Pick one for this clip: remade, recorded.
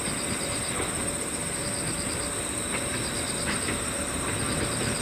recorded